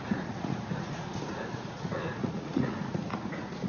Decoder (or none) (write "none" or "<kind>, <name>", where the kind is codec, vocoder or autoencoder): vocoder, Vocos